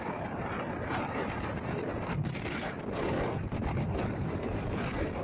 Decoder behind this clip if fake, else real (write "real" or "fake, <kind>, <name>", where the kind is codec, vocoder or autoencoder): fake, vocoder, BigVGAN v2